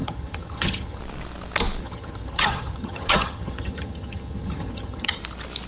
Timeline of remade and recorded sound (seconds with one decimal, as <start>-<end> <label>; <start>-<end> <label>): 0.0-1.0 remade; 1.0-1.8 recorded; 1.8-5.2 remade; 5.2-5.7 recorded

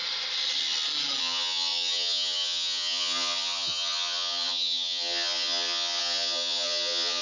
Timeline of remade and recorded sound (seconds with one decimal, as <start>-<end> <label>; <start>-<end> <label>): 0.0-1.2 recorded; 1.2-7.2 remade